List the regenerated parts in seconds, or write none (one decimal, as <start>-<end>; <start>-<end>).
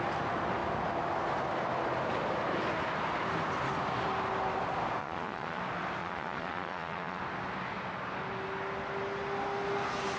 5.0-5.6; 6.0-7.2